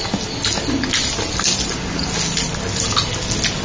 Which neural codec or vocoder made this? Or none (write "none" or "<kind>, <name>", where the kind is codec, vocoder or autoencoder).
none